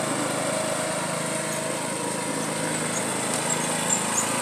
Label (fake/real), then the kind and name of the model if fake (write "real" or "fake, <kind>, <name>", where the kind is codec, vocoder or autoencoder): real